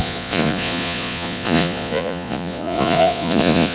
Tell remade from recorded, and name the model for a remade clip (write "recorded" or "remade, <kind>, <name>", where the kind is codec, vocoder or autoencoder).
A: remade, vocoder, Vocos